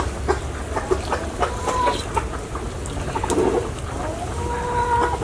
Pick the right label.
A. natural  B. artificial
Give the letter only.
A